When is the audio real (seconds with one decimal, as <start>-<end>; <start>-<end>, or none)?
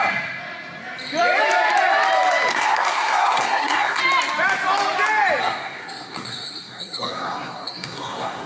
0.0-2.5; 4.0-5.4